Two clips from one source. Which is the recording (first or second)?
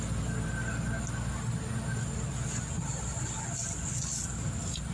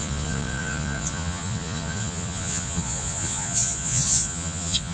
first